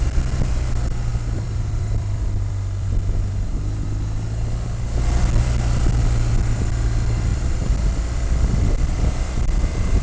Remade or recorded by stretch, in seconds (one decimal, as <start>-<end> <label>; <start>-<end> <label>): 0.0-1.1 recorded; 1.1-2.9 remade; 2.9-7.3 recorded; 7.3-10.0 remade